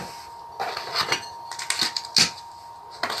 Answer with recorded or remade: recorded